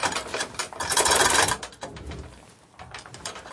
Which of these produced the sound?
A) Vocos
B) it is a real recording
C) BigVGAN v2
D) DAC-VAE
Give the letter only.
B